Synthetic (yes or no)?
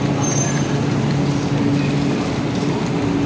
no